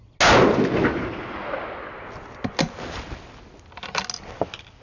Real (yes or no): yes